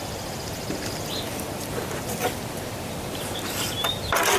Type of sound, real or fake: real